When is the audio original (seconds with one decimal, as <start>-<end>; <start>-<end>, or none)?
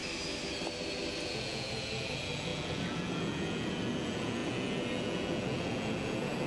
0.0-1.2